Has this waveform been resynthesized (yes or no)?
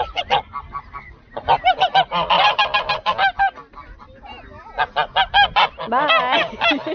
no